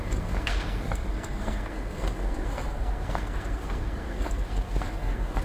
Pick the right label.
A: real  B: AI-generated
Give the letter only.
B